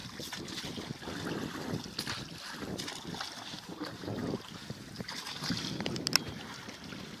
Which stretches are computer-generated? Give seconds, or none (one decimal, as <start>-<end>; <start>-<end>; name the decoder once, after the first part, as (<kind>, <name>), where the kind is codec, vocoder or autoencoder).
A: none